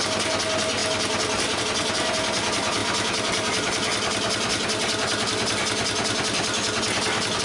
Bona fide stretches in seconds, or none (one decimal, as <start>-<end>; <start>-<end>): 0.0-7.4